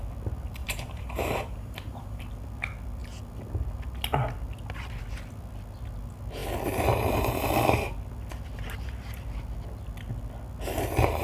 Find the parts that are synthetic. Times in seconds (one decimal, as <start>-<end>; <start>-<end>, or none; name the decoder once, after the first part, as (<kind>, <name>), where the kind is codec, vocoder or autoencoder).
0.6-2.2 (vocoder, BigVGAN v2)